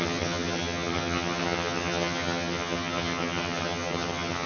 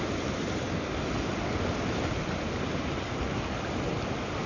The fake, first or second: first